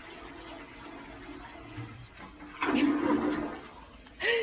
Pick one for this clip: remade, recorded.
recorded